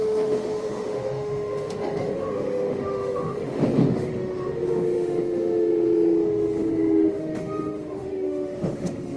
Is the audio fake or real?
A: fake